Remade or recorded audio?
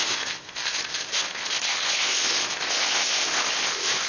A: remade